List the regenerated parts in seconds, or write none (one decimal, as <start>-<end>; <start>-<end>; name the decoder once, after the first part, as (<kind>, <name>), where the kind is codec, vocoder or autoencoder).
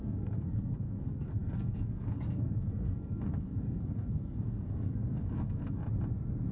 0.0-5.8 (codec, SNAC)